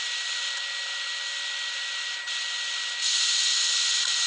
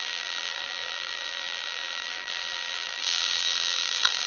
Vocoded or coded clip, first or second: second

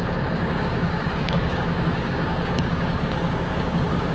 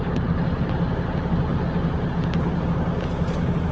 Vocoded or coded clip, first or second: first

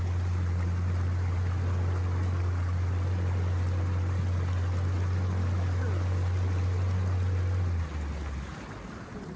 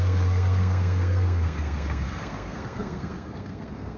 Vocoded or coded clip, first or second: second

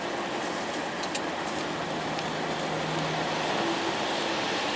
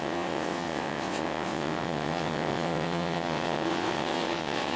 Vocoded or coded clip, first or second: second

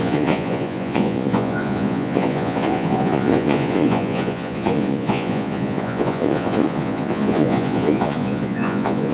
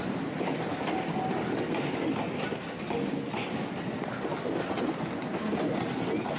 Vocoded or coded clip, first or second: first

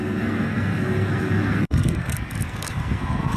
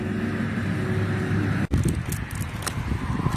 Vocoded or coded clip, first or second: first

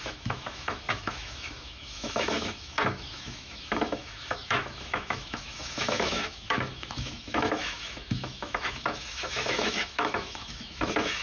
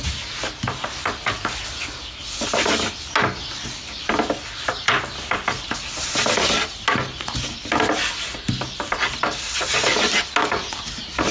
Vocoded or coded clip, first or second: first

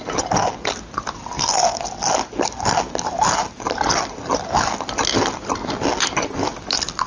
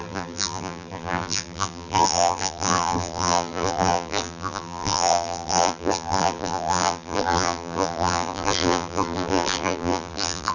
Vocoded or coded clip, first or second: second